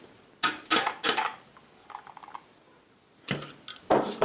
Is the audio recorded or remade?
recorded